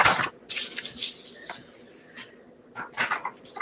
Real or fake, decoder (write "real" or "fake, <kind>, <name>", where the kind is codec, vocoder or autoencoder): real